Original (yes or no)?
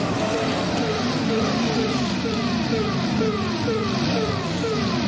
no